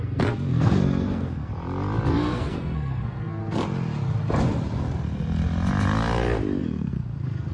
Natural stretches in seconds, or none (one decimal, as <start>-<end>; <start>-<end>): 1.5-2.1; 3.4-6.6